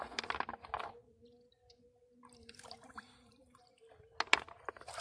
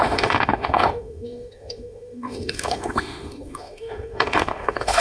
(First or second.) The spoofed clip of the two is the second